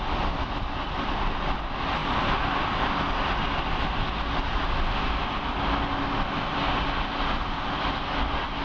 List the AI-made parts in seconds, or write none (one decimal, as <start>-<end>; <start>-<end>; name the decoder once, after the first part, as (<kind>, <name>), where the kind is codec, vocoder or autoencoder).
none